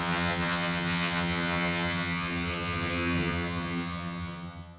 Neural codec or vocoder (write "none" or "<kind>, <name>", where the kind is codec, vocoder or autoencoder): vocoder, HiFi-GAN